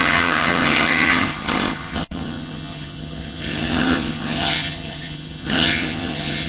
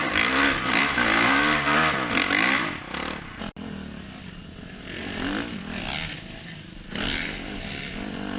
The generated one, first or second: first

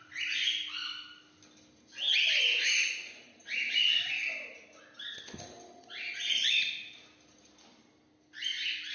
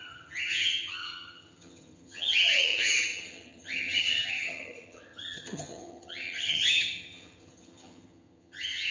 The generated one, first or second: second